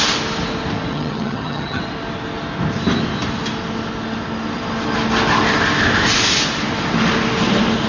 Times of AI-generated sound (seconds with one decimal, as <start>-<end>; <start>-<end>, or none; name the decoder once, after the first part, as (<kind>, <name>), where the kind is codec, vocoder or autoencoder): 0.9-1.8 (vocoder, HiFi-GAN)